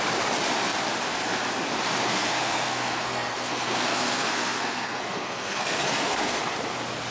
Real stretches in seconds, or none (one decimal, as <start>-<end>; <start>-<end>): 0.0-2.1; 6.4-7.1